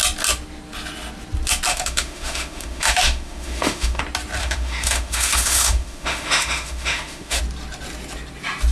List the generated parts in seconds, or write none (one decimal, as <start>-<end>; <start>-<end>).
1.7-4.0; 4.4-7.4